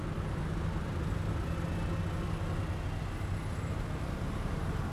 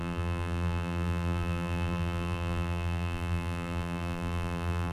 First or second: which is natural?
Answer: first